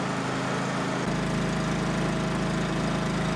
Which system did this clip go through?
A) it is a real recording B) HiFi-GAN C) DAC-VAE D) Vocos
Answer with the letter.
A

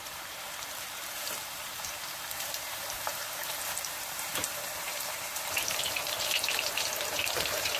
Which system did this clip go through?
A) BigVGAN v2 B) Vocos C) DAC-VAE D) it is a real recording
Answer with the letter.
A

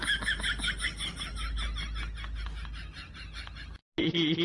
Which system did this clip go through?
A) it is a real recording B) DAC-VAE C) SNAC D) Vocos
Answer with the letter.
A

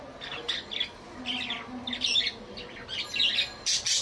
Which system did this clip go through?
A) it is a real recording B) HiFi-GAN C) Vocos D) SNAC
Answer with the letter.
A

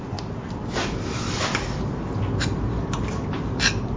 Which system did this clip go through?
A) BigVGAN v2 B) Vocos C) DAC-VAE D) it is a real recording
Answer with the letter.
D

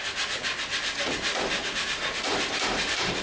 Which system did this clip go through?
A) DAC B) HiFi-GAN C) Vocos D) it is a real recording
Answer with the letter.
D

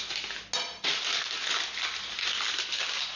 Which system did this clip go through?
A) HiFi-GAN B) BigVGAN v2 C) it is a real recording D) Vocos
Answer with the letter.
C